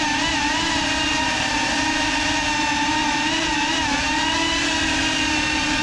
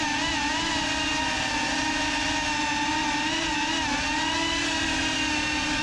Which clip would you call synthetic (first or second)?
first